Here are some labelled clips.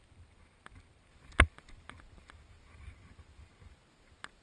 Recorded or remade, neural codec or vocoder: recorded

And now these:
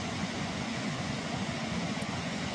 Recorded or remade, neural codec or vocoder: remade, vocoder, Vocos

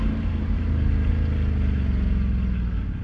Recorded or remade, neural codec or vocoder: recorded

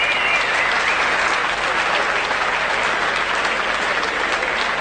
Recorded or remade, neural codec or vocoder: recorded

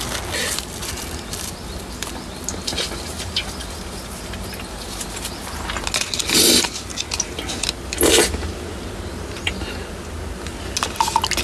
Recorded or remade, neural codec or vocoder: recorded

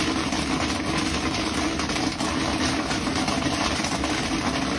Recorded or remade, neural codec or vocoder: recorded